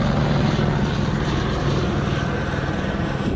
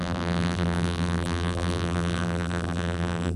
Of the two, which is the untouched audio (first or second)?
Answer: first